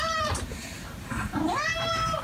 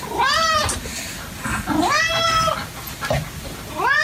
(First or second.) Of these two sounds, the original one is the second